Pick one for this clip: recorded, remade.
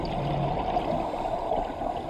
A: recorded